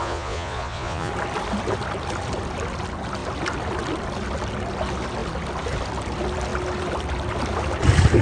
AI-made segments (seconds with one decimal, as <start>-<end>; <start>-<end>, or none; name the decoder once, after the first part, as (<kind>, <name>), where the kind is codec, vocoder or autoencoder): 0.0-1.1 (vocoder, Vocos)